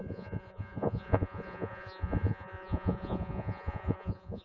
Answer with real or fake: fake